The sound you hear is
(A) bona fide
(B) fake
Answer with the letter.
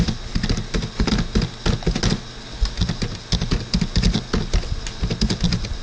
A